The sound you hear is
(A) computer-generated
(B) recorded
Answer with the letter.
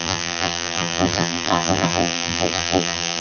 A